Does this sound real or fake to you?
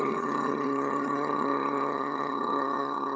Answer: fake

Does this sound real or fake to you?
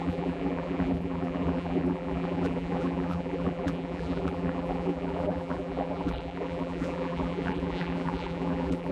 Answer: fake